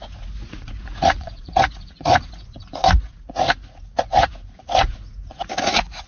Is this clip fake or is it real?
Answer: fake